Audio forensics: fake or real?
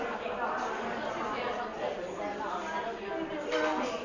real